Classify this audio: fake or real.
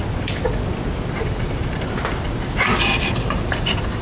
real